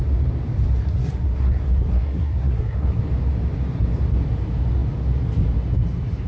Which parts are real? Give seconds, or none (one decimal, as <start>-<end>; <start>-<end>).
0.0-0.8; 3.0-6.3